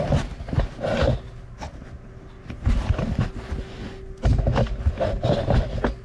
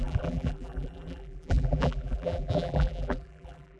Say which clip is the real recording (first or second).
first